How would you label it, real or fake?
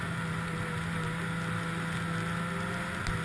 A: real